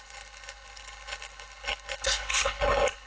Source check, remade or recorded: remade